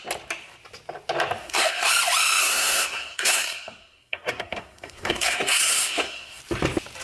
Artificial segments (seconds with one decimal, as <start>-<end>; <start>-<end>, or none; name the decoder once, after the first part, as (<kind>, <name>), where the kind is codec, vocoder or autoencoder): 1.4-1.9 (codec, SNAC); 2.4-6.4